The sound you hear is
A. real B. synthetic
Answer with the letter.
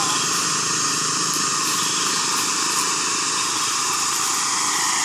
A